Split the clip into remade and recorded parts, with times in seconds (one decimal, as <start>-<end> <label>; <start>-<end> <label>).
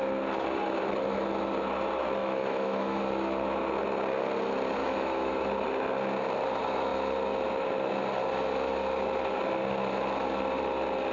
0.0-2.2 recorded; 2.2-3.0 remade; 3.0-4.8 recorded; 4.8-5.4 remade; 5.4-11.1 recorded